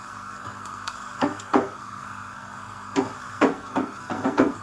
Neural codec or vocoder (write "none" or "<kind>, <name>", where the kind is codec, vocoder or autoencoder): codec, SNAC